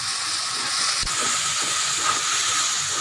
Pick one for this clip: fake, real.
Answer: fake